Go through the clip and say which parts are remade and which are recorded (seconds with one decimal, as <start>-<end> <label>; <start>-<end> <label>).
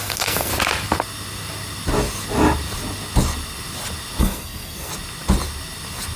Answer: 0.0-0.5 remade; 0.5-4.2 recorded; 4.2-4.9 remade; 4.9-6.2 recorded